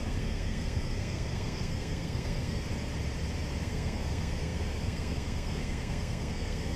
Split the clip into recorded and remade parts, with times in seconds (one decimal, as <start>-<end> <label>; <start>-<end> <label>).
0.0-2.7 remade; 2.7-3.6 recorded; 3.6-6.8 remade